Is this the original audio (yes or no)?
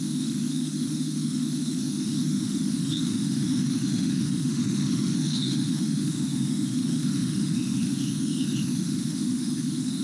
no